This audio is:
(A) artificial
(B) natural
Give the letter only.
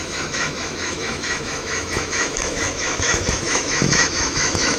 A